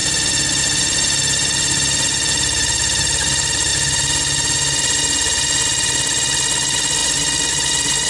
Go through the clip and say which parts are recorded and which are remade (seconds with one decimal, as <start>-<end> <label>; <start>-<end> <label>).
0.0-8.1 recorded